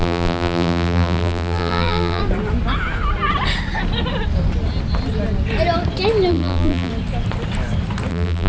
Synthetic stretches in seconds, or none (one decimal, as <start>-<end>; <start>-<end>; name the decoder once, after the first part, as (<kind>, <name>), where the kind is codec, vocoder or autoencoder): 0.0-2.2 (vocoder, BigVGAN v2); 6.3-6.9; 8.1-8.5